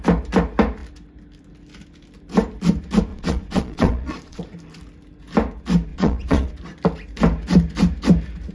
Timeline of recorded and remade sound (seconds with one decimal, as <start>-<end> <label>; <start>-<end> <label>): 0.0-3.1 recorded; 3.1-4.4 remade; 4.4-5.9 recorded; 5.9-6.5 remade; 6.5-8.5 recorded